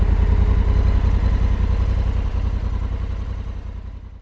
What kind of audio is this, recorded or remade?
recorded